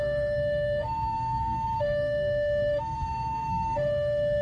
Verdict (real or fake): fake